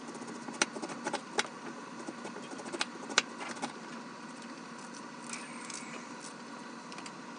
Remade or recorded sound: recorded